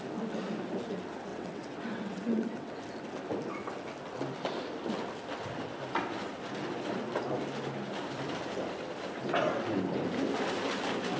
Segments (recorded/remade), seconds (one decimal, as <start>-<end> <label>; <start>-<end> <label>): 0.0-1.3 recorded; 1.3-2.8 remade; 2.8-11.2 recorded